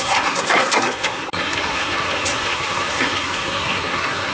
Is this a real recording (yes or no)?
no